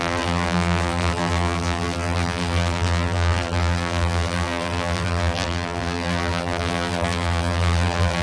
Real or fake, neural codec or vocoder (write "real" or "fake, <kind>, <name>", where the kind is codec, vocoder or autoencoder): fake, vocoder, BigVGAN v2